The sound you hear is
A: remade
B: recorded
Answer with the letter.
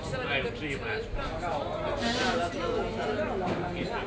B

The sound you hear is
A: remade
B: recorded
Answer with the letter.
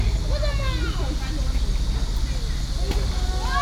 B